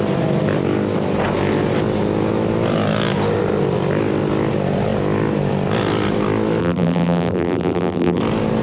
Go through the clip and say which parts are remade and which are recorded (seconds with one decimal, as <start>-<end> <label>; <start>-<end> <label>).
0.0-6.6 recorded; 6.6-8.2 remade; 8.2-8.6 recorded